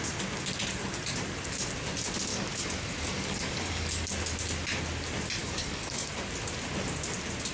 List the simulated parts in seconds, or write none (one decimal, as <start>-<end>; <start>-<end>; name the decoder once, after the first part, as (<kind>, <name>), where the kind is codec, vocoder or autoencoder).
2.3-4.1 (codec, DAC); 5.4-6.1